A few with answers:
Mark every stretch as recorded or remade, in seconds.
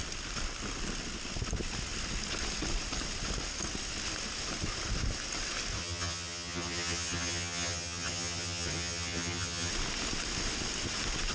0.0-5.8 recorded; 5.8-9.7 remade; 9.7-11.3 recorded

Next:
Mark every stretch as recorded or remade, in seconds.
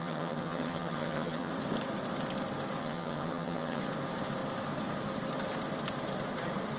0.0-1.5 remade; 1.5-2.8 recorded; 2.8-3.8 remade; 3.8-6.8 recorded